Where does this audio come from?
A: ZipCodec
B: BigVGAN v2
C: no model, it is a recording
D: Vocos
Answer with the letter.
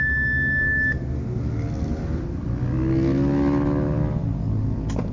C